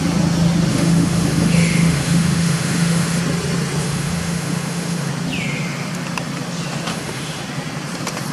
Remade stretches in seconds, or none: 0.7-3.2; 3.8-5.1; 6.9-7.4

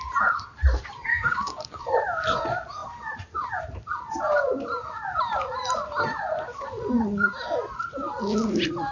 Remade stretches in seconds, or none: 1.1-1.8

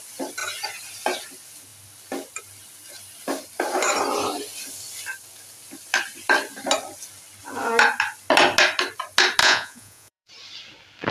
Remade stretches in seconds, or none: 9.4-10.3

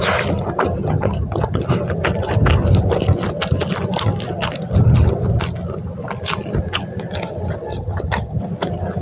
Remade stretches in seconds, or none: 0.8-1.6; 7.7-8.4